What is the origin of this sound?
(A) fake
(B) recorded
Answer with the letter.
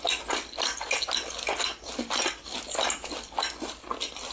B